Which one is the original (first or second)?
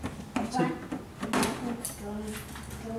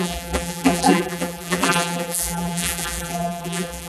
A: first